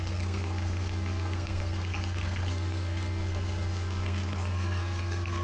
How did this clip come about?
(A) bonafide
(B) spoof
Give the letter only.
B